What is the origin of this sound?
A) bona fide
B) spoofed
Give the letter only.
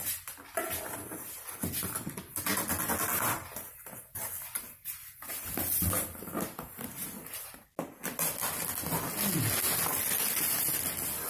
A